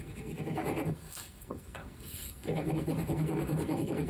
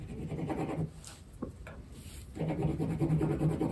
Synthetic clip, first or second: first